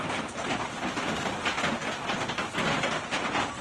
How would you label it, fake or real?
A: real